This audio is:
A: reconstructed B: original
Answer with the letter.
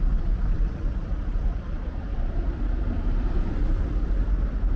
A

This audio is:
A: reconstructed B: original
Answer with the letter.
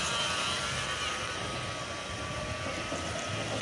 B